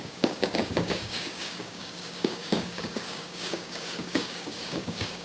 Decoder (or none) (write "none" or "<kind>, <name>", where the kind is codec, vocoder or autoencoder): codec, DAC